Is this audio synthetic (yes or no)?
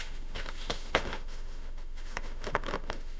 yes